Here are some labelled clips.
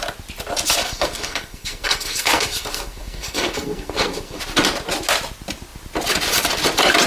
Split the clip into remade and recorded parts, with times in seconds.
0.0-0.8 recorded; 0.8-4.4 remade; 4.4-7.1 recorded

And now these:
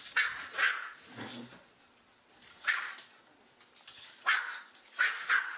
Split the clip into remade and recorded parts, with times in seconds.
0.0-1.3 remade; 1.3-4.7 recorded; 4.7-5.6 remade

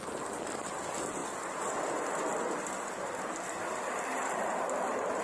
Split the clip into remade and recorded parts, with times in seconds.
0.0-5.2 recorded

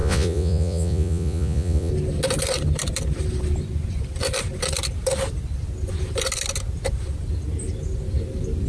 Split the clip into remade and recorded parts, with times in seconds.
0.0-1.9 remade; 1.9-8.7 recorded

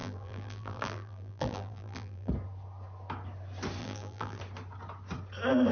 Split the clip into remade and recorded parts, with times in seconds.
0.0-2.3 remade; 2.3-3.8 recorded; 3.8-4.4 remade; 4.4-5.7 recorded

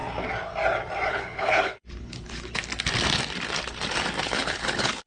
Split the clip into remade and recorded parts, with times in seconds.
0.0-1.1 recorded; 1.1-2.6 remade; 2.6-4.2 recorded; 4.2-5.1 remade

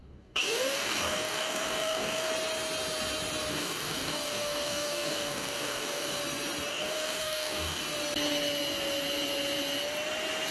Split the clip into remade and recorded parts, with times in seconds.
0.0-2.3 remade; 2.3-3.5 recorded; 3.5-6.2 remade; 6.2-6.7 recorded; 6.7-7.8 remade; 7.8-10.5 recorded

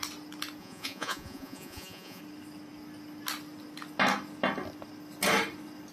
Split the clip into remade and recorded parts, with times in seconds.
0.0-0.6 recorded; 0.6-2.2 remade; 2.2-5.9 recorded